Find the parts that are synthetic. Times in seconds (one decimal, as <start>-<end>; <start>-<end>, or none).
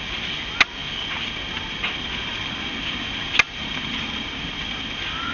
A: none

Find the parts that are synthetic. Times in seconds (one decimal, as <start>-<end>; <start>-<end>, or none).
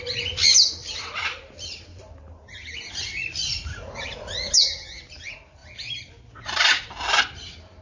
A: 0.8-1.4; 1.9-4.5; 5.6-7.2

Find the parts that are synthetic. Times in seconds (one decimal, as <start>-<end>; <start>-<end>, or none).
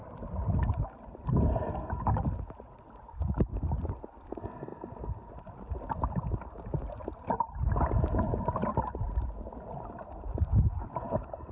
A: none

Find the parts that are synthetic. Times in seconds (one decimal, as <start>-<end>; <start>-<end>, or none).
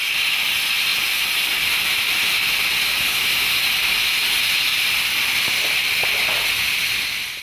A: 0.9-1.9; 4.7-7.4